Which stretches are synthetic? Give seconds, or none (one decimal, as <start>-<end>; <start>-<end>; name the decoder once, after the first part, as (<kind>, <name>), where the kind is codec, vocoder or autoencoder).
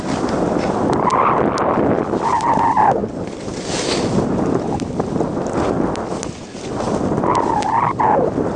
none